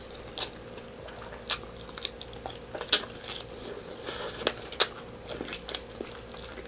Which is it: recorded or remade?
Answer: recorded